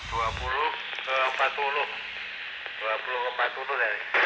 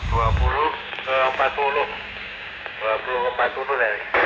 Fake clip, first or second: second